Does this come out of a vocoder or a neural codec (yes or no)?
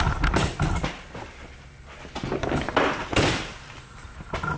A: no